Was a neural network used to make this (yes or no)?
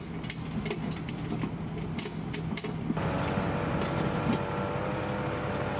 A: no